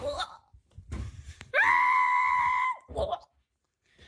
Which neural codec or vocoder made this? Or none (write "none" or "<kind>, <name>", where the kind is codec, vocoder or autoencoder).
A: vocoder, BigVGAN v2